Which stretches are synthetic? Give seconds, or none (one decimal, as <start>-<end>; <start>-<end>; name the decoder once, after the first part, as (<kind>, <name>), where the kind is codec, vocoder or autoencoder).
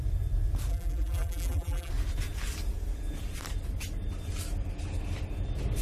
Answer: 0.7-1.9 (vocoder, BigVGAN v2)